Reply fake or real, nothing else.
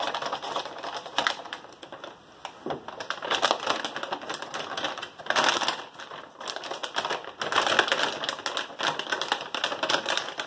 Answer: real